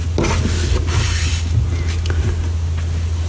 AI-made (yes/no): no